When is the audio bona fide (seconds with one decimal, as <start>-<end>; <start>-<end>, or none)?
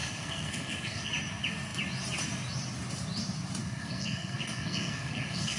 1.1-3.6